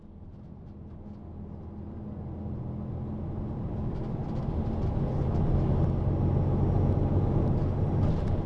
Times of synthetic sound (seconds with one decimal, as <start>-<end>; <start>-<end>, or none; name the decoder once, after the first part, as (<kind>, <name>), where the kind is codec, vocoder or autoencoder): none